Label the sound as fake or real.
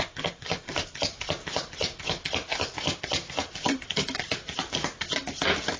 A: real